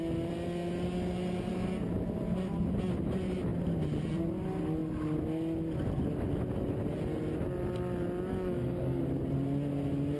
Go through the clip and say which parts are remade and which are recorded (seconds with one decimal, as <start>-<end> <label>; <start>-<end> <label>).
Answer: 0.0-8.3 recorded; 8.3-9.0 remade; 9.0-10.2 recorded